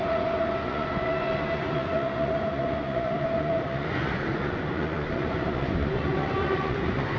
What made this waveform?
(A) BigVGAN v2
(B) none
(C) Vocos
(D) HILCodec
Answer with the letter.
C